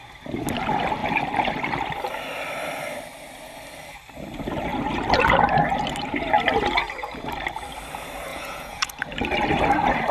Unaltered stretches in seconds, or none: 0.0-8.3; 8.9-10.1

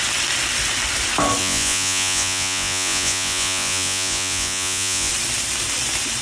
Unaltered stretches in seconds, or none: 0.0-1.4; 5.1-6.2